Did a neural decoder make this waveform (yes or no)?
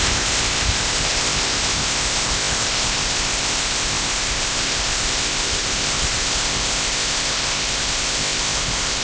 yes